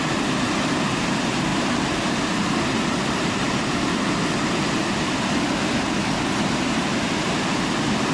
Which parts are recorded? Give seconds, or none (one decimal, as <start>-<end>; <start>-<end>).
0.0-1.5; 3.7-8.1